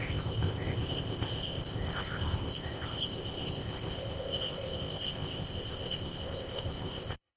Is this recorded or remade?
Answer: remade